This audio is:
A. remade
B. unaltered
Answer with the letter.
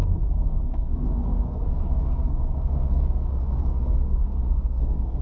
A